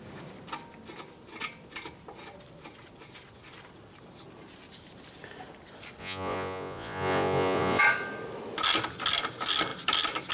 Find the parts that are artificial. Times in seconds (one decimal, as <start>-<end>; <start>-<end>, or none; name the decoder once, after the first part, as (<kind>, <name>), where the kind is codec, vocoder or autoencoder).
6.0-7.8 (vocoder, Vocos)